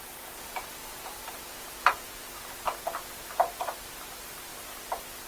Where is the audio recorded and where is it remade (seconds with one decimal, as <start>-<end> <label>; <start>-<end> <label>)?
0.0-4.5 remade; 4.5-5.3 recorded